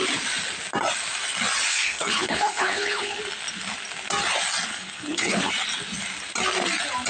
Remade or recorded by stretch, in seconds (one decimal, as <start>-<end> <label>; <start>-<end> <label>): 0.0-1.7 recorded; 1.7-3.2 remade; 3.2-4.7 recorded; 4.7-5.5 remade; 5.5-7.1 recorded